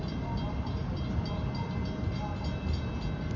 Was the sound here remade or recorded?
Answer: recorded